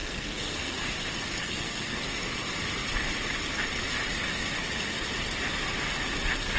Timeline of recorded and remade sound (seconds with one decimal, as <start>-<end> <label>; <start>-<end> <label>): 0.0-0.9 remade; 0.9-1.4 recorded; 1.4-2.0 remade; 2.0-6.6 recorded